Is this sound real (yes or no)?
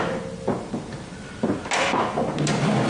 yes